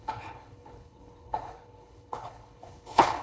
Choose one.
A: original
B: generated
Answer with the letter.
B